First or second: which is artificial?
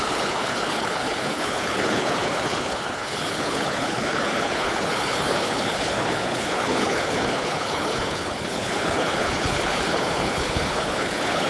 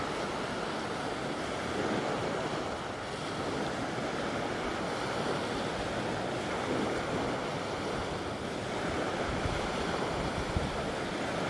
first